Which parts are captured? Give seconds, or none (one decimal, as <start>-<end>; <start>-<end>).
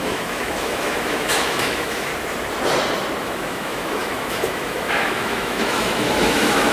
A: 2.1-3.2